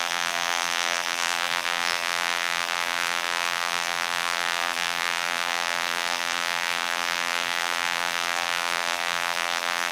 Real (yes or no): no